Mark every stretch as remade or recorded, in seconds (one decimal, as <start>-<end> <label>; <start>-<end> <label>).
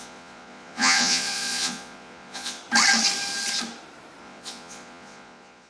0.0-2.6 remade; 2.6-4.2 recorded; 4.2-5.7 remade